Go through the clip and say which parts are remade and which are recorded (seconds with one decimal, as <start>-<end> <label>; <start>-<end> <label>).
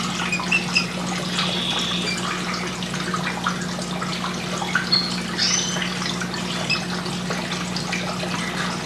0.0-8.9 recorded